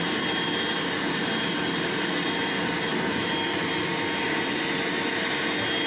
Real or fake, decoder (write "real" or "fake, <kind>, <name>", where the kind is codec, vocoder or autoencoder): real